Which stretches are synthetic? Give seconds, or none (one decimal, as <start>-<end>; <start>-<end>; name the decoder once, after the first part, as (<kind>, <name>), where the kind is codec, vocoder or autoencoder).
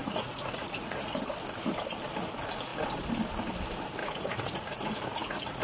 0.0-1.3 (vocoder, Vocos); 4.0-5.6